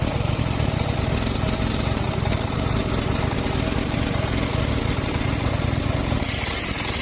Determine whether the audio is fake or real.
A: real